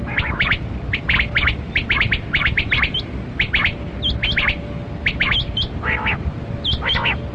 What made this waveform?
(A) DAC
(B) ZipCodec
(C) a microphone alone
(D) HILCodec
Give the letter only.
C